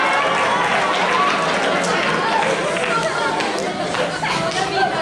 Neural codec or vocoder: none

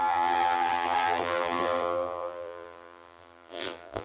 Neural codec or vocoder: vocoder, BigVGAN v2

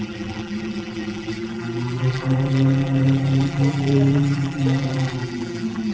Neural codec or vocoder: vocoder, BigVGAN v2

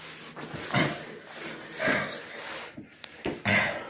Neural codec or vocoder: none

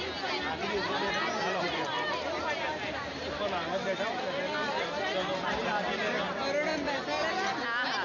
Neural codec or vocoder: none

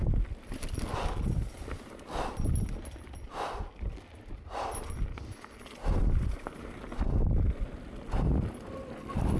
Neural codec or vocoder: none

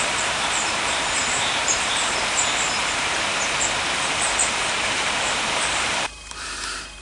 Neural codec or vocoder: vocoder, BigVGAN v2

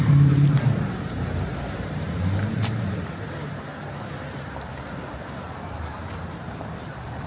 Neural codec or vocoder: vocoder, BigVGAN v2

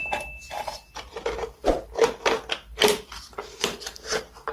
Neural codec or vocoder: none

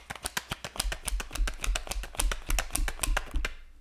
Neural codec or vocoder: none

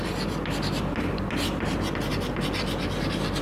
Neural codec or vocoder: none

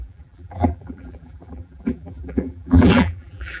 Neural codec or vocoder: vocoder, BigVGAN v2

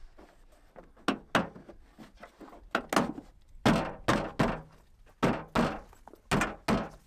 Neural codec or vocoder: none